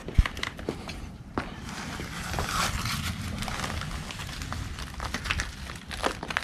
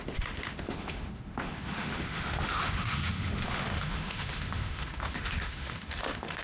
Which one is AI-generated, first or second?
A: second